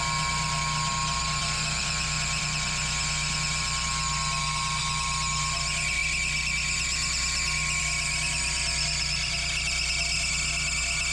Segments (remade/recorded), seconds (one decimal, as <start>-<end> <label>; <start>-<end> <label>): 0.0-11.1 recorded